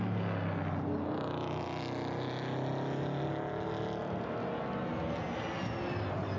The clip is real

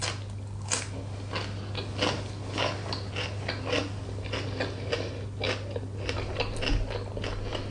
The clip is real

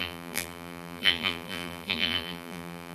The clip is fake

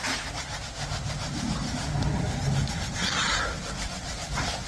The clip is real